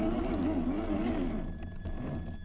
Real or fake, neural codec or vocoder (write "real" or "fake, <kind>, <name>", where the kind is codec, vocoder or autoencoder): real